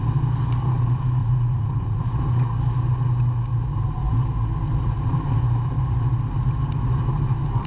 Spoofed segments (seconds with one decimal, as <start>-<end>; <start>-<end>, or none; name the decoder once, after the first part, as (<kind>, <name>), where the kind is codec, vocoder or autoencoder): 1.2-2.1 (vocoder, Vocos)

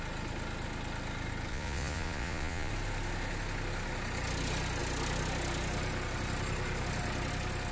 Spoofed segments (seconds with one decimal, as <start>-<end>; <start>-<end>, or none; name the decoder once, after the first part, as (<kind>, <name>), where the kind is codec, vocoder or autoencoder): 1.5-2.7 (vocoder, Vocos)

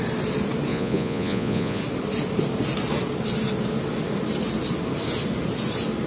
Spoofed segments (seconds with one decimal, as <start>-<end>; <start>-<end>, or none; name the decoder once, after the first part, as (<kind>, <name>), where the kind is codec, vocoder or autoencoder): 0.7-1.8 (vocoder, Vocos)

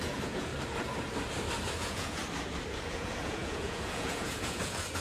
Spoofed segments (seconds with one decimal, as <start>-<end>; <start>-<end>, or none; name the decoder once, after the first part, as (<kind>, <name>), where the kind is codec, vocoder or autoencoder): 0.0-0.5 (vocoder, Vocos); 1.7-2.2; 2.9-5.0

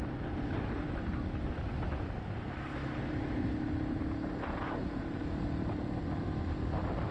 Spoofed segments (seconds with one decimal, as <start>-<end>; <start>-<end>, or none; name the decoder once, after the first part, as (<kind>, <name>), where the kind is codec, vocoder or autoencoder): none

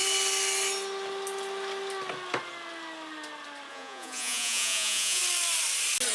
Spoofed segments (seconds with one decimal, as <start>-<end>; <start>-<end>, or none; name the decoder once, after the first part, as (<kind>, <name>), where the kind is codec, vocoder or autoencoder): 3.7-5.2 (vocoder, Vocos)

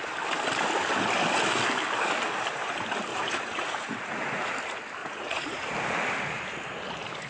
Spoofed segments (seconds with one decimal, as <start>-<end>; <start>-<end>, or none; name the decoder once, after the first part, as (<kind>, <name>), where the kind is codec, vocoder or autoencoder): 3.1-4.5 (vocoder, Vocos); 5.0-5.7